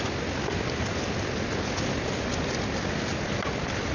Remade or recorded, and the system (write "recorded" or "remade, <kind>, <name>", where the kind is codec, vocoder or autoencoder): recorded